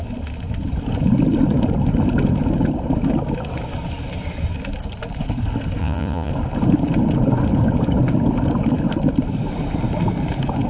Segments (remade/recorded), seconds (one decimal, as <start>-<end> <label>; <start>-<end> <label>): 0.0-5.8 recorded; 5.8-6.3 remade; 6.3-10.7 recorded